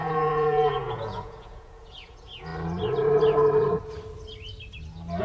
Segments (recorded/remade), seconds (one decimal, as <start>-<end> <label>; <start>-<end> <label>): 0.0-2.5 remade; 2.5-5.2 recorded